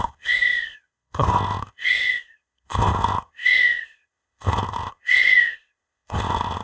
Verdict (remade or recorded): remade